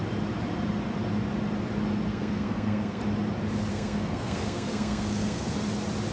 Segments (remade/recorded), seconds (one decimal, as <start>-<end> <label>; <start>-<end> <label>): 0.0-2.1 recorded; 2.1-3.0 remade; 3.0-3.7 recorded; 3.7-5.5 remade; 5.5-6.1 recorded